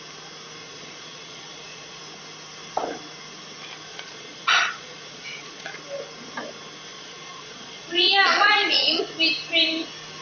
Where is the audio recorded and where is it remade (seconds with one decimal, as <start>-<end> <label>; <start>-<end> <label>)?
0.0-0.6 recorded; 0.6-2.0 remade; 2.0-3.9 recorded; 3.9-5.8 remade; 5.8-6.9 recorded; 6.9-9.0 remade; 9.0-10.2 recorded